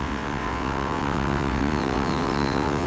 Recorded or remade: remade